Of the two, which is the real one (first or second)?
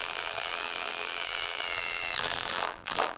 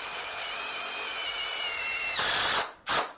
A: second